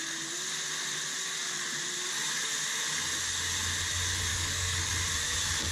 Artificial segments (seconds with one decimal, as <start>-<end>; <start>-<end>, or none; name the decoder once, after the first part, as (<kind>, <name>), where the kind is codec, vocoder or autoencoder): 4.3-4.9 (codec, DAC)